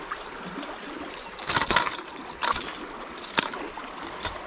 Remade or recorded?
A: recorded